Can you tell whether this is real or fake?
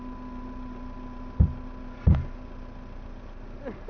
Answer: real